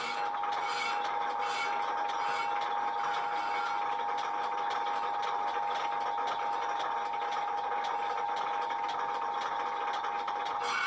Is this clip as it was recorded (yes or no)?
yes